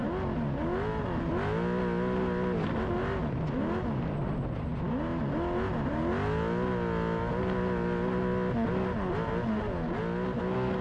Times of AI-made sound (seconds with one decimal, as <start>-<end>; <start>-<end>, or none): none